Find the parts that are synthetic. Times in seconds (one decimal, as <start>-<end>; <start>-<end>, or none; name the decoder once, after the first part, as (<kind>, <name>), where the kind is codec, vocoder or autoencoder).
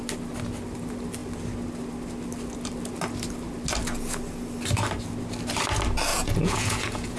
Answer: 6.1-7.2 (vocoder, Vocos)